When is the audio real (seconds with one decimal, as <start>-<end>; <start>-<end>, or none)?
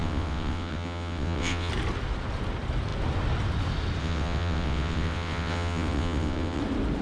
1.7-4.0; 6.6-7.0